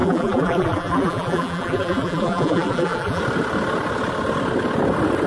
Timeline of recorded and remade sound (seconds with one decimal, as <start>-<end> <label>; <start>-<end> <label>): 0.0-3.2 remade; 3.2-5.3 recorded